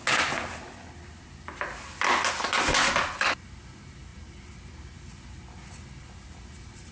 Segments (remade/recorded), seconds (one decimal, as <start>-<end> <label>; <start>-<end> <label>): 0.0-6.9 recorded